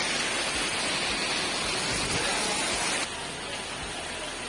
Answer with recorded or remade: recorded